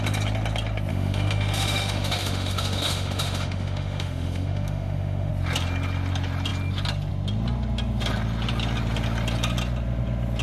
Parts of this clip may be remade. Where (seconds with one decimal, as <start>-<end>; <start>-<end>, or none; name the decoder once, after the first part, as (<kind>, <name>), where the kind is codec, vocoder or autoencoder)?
0.9-5.3 (autoencoder, DAC-VAE)